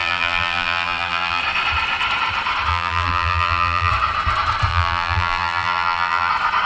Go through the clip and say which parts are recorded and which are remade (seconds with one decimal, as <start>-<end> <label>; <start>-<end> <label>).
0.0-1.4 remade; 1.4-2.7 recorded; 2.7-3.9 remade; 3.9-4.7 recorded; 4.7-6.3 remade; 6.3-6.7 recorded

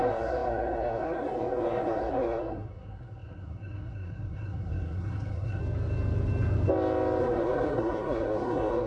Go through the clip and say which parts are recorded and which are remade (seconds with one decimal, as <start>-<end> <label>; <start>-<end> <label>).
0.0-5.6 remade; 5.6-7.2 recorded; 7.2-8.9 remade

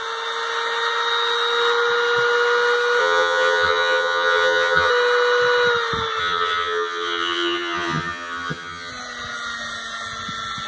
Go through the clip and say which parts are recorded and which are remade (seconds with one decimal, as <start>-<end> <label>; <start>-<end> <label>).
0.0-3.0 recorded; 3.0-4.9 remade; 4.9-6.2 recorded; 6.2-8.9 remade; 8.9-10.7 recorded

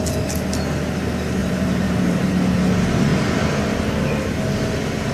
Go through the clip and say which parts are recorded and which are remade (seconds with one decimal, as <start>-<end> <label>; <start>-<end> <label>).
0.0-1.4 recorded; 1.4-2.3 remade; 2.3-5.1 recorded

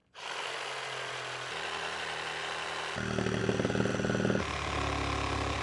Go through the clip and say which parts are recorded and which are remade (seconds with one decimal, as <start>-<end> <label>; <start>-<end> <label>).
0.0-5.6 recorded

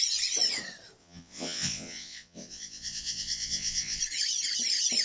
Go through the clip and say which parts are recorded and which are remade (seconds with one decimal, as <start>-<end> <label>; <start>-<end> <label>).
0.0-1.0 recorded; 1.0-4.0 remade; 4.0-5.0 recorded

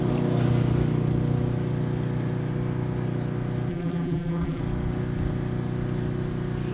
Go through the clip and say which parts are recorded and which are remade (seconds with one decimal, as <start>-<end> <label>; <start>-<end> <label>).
0.0-3.7 recorded; 3.7-4.6 remade; 4.6-6.7 recorded

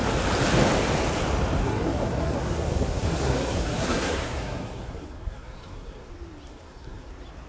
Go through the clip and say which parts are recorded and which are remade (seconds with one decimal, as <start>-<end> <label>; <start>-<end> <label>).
0.0-1.6 recorded; 1.6-6.1 remade; 6.1-6.5 recorded; 6.5-7.1 remade; 7.1-7.5 recorded